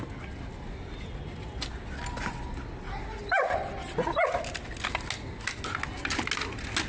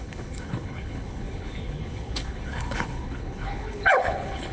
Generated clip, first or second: second